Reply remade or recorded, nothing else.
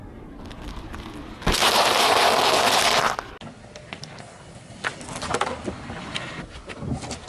recorded